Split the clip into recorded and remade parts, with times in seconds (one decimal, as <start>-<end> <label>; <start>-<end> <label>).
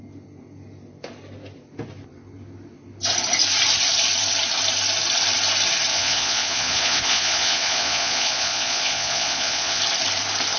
0.0-5.9 recorded; 5.9-9.8 remade; 9.8-10.6 recorded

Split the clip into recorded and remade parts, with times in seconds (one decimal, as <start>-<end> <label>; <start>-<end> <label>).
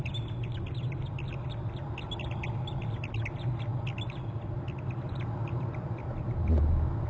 0.0-7.1 recorded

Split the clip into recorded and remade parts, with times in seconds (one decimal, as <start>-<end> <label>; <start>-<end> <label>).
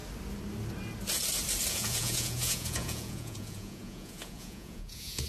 0.0-1.7 recorded; 1.7-5.3 remade